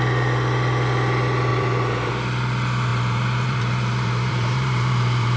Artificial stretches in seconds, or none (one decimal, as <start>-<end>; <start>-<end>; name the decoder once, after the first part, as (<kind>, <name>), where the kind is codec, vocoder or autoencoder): 1.5-2.1 (vocoder, BigVGAN v2); 2.9-5.4

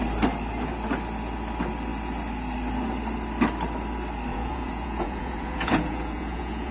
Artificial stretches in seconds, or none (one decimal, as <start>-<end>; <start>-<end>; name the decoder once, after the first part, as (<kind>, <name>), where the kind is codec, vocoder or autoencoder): 4.3-6.7 (vocoder, Vocos)

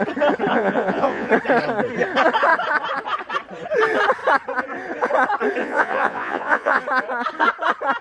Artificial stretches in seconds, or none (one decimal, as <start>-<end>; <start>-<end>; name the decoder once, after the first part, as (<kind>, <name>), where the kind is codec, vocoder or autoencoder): 0.5-1.3 (vocoder, Vocos); 5.6-6.8

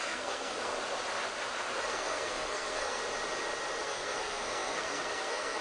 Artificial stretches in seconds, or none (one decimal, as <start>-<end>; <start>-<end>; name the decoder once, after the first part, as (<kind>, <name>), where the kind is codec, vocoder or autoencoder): 0.0-0.7 (codec, SNAC); 1.8-3.0; 3.8-5.6